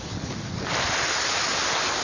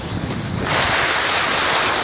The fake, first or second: first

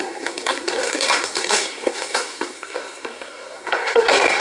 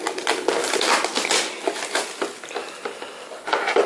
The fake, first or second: first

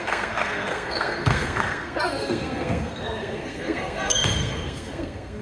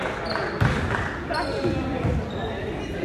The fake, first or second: first